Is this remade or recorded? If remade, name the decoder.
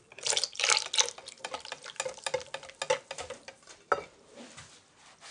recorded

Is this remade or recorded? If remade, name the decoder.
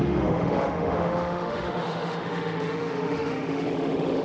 remade, autoencoder, DAC-VAE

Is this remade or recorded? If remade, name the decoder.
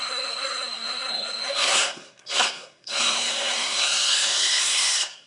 remade, codec, SNAC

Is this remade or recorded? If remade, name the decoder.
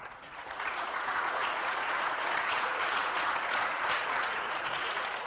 remade, vocoder, Vocos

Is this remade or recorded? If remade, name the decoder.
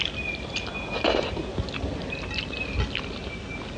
recorded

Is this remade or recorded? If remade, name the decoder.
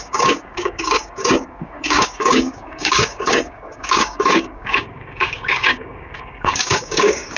remade, codec, DAC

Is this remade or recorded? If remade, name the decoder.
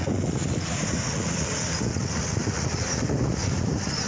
remade, vocoder, Vocos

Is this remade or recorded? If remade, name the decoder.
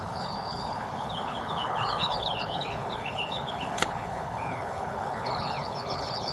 remade, codec, HILCodec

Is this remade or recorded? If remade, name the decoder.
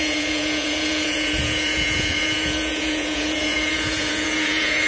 remade, vocoder, Vocos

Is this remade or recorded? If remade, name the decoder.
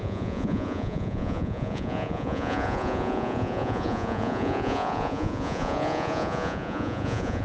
remade, vocoder, Vocos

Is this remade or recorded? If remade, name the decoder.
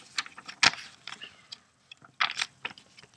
recorded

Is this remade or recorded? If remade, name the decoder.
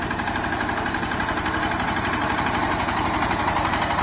remade, vocoder, BigVGAN v2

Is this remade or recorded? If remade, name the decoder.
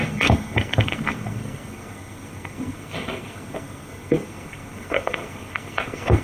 remade, codec, SNAC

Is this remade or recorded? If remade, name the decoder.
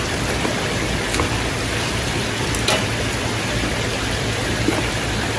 remade, vocoder, BigVGAN v2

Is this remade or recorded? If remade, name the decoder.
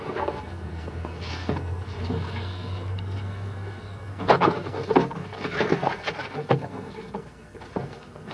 remade, codec, SNAC